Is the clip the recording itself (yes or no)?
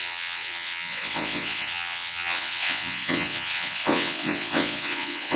no